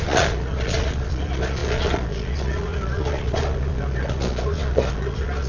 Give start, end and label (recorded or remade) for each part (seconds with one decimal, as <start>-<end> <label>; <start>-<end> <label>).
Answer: 0.0-5.5 remade